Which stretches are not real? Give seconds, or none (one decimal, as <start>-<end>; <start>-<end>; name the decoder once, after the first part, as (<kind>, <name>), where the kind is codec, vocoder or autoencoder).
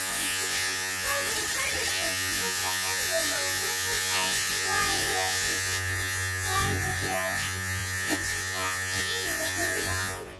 0.0-1.3 (vocoder, Vocos); 1.9-10.4